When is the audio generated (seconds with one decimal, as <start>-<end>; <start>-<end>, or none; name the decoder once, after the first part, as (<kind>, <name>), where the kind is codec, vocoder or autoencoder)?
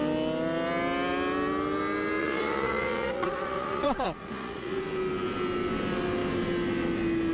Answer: 2.2-4.8 (vocoder, Vocos)